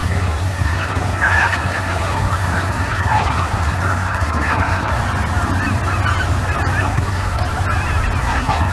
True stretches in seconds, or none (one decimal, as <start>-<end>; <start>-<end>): 5.0-6.8; 7.4-8.2